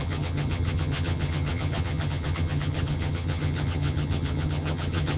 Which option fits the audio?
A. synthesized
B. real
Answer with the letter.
A